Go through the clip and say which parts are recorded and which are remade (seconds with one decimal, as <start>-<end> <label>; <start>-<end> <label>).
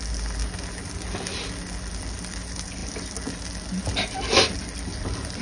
0.0-5.4 recorded